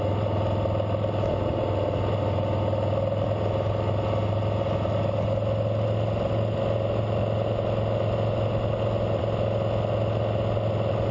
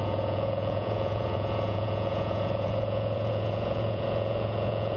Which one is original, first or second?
first